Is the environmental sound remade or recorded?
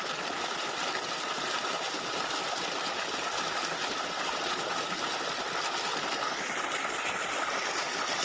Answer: recorded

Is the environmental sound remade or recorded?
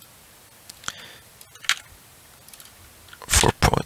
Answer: recorded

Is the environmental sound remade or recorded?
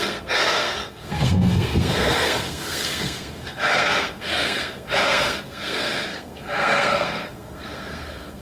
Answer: remade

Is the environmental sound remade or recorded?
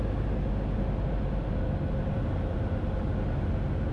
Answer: recorded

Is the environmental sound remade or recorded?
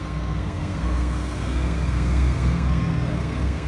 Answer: remade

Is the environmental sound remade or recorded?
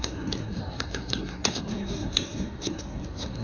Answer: remade